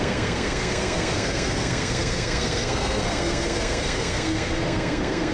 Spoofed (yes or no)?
yes